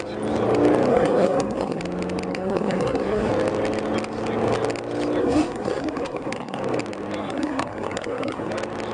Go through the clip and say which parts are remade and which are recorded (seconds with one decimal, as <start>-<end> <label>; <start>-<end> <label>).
0.0-0.9 recorded; 0.9-1.8 remade; 1.8-2.3 recorded; 2.3-3.3 remade; 3.3-5.2 recorded; 5.2-6.6 remade; 6.6-7.2 recorded; 7.2-8.5 remade; 8.5-8.9 recorded